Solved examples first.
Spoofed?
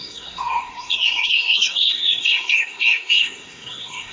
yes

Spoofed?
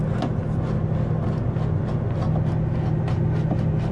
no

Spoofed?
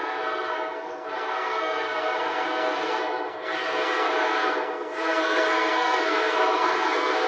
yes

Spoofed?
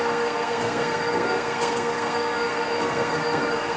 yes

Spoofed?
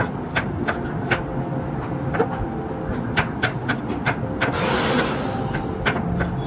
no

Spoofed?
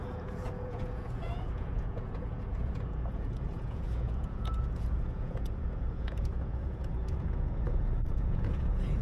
yes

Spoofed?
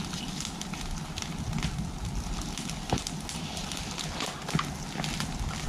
no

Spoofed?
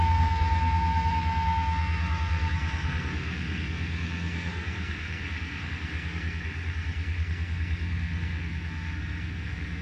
yes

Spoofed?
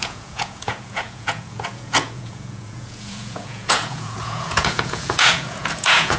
yes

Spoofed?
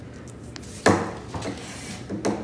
no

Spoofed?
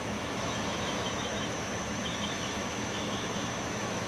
yes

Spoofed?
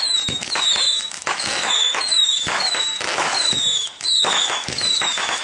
yes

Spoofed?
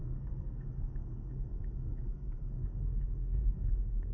yes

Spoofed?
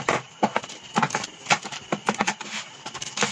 yes